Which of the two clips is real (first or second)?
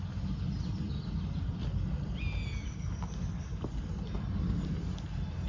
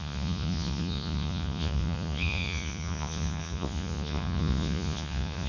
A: first